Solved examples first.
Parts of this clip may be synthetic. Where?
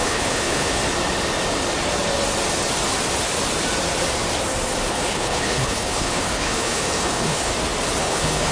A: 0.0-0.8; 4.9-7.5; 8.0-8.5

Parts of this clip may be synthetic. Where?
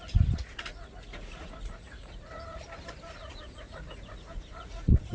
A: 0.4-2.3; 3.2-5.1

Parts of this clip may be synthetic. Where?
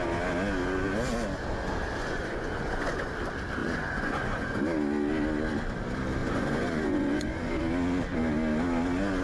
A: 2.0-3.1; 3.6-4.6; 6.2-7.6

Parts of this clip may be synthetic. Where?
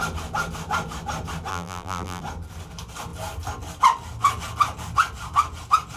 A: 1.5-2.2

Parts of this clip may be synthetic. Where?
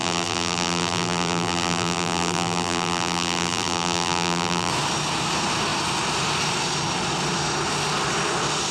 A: 0.0-4.7